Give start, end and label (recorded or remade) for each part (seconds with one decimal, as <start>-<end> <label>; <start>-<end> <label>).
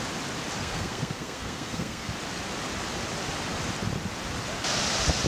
0.0-0.6 recorded; 0.6-2.1 remade; 2.1-5.3 recorded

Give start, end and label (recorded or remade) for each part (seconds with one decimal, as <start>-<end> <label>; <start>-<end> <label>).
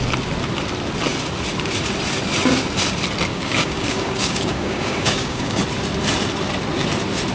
0.0-3.3 recorded; 3.3-5.6 remade; 5.6-7.3 recorded